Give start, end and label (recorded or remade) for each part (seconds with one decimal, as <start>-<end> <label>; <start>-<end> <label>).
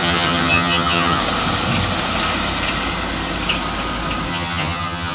0.0-1.2 remade; 1.2-4.3 recorded; 4.3-5.1 remade